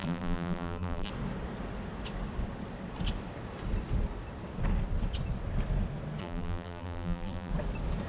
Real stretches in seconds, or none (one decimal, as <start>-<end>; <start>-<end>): 1.1-6.2; 7.5-8.1